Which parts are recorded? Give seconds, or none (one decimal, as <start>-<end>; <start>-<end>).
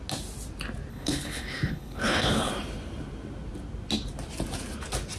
0.0-0.9; 2.5-5.2